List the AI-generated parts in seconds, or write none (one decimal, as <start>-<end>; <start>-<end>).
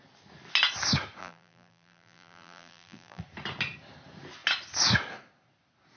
1.2-3.2